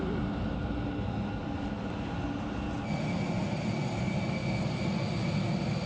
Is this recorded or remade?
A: recorded